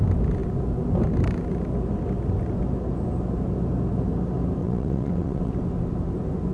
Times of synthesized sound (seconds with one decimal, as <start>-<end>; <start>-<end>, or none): 4.6-5.5